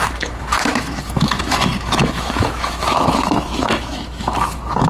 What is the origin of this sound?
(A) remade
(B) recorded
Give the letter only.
A